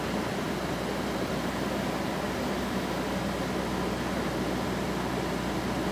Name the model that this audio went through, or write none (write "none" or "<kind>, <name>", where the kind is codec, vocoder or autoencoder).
none